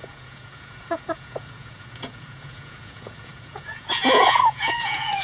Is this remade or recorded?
remade